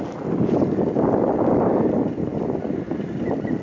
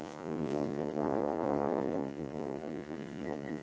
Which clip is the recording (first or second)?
first